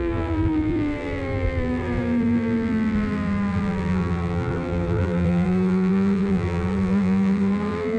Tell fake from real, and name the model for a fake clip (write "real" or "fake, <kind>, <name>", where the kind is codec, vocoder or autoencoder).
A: fake, vocoder, BigVGAN v2